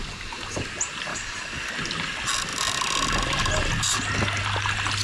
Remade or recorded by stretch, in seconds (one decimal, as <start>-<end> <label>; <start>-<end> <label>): 0.0-1.1 recorded; 1.1-1.7 remade; 1.7-5.0 recorded